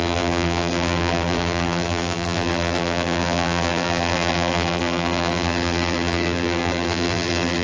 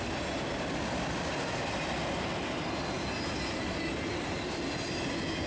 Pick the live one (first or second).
second